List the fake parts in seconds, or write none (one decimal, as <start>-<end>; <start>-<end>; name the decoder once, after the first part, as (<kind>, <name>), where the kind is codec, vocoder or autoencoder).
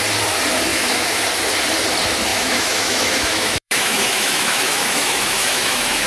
0.7-1.2 (autoencoder, DAC-VAE); 2.3-6.1